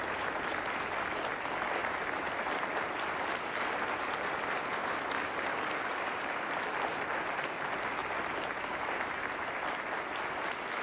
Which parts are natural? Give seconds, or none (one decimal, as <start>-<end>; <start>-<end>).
0.0-1.8; 6.8-10.8